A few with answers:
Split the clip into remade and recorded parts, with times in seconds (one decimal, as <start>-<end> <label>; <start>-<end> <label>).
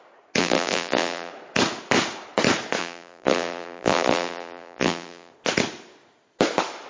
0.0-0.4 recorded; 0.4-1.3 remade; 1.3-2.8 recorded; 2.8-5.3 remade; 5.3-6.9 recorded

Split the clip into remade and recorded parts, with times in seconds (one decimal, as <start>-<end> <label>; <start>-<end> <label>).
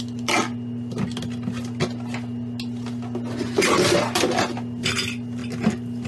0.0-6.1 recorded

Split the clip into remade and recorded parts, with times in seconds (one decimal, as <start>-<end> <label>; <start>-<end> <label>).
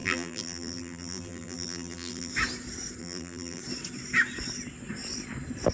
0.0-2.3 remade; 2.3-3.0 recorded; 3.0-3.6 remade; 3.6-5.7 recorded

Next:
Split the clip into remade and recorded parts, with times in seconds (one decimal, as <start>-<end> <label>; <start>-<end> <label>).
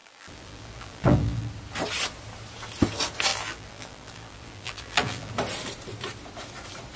0.0-1.5 remade; 1.5-3.3 recorded; 3.3-5.3 remade; 5.3-7.0 recorded